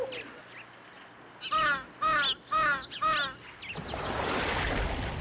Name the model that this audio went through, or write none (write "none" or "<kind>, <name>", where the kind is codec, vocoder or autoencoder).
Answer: none